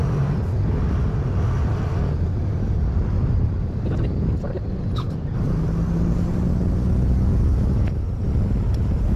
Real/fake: real